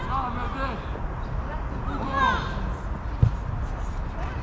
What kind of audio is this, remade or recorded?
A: recorded